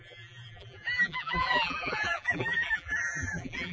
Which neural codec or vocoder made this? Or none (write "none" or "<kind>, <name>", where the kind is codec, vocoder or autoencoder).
vocoder, BigVGAN v2